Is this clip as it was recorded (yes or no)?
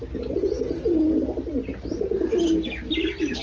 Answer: yes